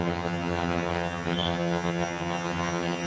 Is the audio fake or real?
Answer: fake